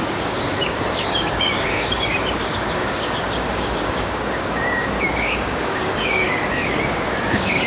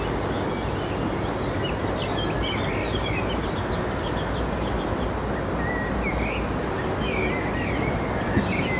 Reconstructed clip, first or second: first